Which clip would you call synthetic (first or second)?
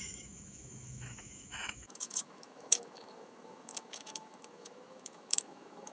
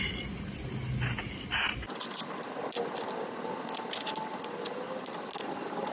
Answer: first